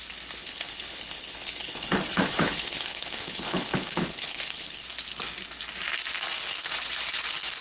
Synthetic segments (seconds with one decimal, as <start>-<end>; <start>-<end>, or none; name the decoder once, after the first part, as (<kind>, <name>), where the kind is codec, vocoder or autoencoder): 0.4-4.8 (codec, HILCodec)